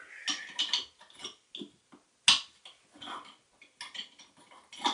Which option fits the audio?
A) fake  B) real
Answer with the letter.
B